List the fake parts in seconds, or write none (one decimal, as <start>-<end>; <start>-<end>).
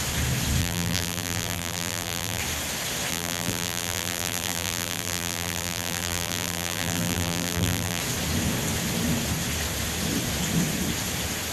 0.6-2.4; 3.1-8.0